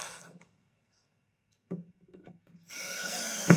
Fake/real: fake